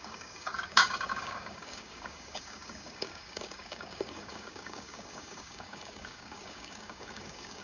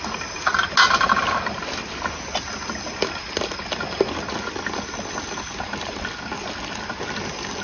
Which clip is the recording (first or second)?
second